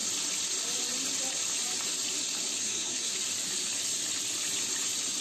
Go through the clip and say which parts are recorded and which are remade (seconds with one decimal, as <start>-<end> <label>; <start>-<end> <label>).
0.0-2.6 recorded; 2.6-3.1 remade; 3.1-5.2 recorded